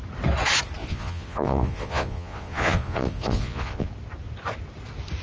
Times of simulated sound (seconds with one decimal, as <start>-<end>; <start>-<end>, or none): 0.8-3.9